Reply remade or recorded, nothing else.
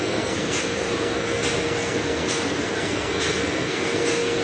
remade